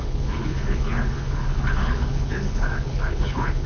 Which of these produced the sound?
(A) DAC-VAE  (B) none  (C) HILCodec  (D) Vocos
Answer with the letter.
C